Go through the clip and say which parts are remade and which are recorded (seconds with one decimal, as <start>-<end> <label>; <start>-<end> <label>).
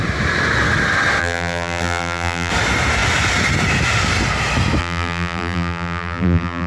0.0-1.2 recorded; 1.2-2.5 remade; 2.5-4.8 recorded; 4.8-6.7 remade